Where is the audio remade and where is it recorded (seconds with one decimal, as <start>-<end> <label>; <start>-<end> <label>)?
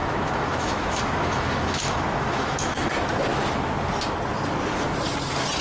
0.0-2.9 remade; 2.9-5.6 recorded